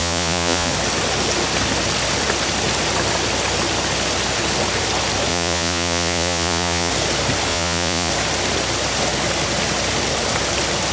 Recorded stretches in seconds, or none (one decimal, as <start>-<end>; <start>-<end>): 0.7-5.3; 6.9-7.5; 8.1-10.9